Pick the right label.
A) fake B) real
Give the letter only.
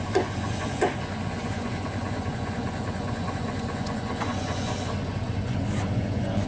A